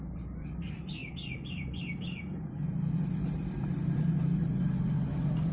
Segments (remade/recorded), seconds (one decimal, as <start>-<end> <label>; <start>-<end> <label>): 0.0-5.5 recorded